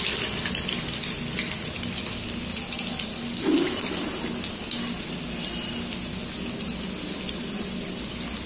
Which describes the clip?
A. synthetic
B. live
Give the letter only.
B